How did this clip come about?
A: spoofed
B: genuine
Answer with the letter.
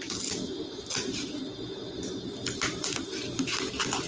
B